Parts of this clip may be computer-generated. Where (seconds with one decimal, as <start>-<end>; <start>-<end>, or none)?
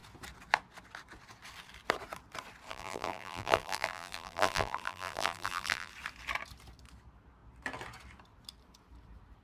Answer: 2.7-5.9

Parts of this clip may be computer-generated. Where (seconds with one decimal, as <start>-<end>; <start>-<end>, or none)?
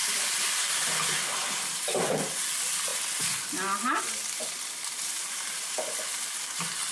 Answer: none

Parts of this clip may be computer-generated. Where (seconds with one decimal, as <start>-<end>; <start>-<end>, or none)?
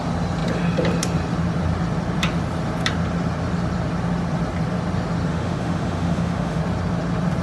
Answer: 5.3-6.6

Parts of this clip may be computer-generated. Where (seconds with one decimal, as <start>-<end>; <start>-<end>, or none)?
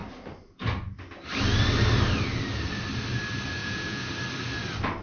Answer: 3.6-4.1